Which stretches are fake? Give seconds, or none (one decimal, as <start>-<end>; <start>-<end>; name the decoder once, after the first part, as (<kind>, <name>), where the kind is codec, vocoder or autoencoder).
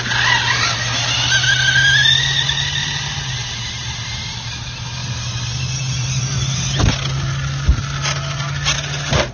5.0-6.9 (vocoder, BigVGAN v2)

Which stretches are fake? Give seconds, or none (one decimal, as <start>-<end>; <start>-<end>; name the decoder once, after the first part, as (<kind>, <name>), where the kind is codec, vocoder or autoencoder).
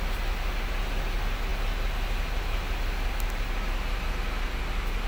none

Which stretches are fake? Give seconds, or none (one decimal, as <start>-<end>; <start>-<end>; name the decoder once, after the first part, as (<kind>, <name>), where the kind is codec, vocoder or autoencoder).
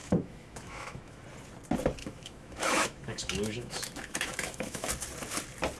0.0-1.2 (autoencoder, DAC-VAE); 2.0-4.9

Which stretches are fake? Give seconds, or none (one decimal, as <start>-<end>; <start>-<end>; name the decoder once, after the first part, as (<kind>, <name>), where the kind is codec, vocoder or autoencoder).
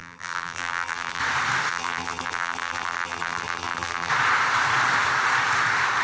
0.0-1.2 (vocoder, BigVGAN v2); 1.7-4.1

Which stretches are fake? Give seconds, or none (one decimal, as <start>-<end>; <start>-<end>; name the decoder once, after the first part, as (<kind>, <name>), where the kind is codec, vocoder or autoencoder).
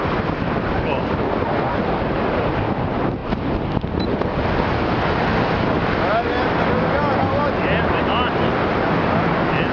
7.2-7.9 (vocoder, BigVGAN v2)